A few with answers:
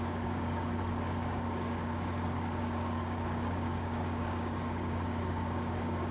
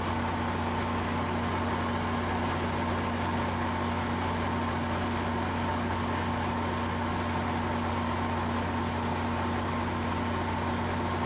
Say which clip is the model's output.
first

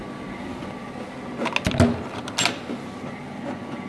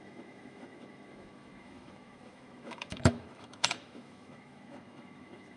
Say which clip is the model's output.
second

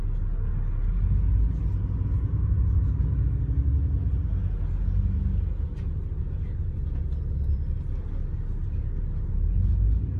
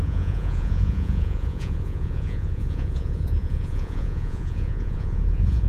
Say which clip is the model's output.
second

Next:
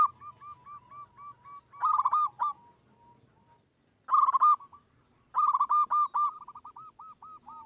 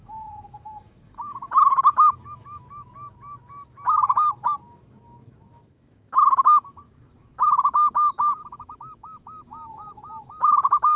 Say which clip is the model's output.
second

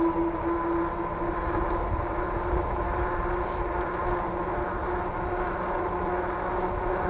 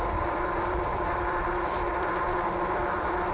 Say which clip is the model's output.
second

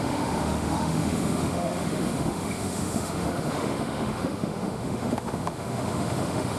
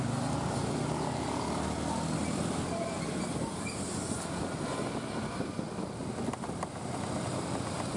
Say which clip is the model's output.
first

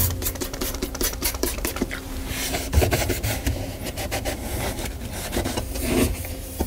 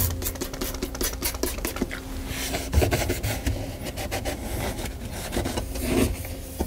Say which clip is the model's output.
first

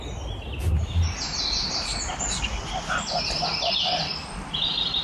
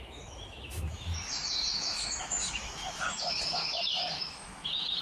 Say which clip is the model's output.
second